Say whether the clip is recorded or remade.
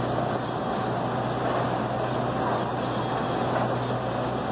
recorded